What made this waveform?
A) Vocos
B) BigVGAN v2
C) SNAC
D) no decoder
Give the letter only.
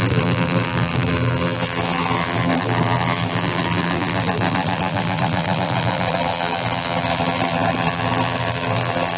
B